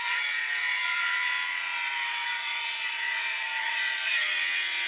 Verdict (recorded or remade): remade